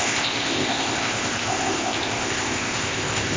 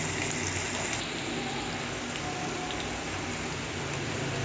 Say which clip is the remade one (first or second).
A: first